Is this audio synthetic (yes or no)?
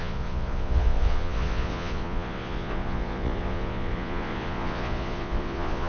yes